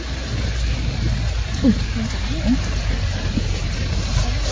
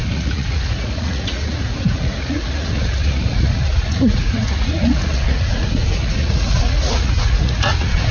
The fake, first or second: second